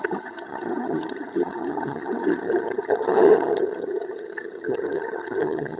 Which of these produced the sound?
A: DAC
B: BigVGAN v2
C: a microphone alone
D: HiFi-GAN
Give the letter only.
D